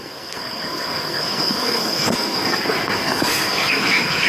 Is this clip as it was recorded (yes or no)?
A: no